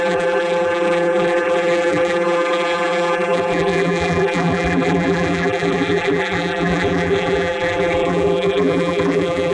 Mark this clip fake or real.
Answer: fake